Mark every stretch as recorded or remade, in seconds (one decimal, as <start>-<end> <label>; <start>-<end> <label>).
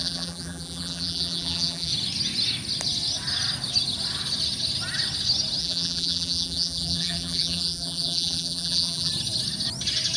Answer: 0.0-1.9 remade; 1.9-5.6 recorded; 5.6-9.1 remade; 9.1-10.2 recorded